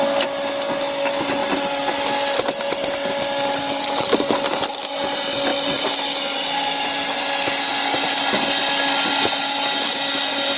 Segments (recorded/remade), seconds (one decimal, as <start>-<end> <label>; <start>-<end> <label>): 0.0-10.6 recorded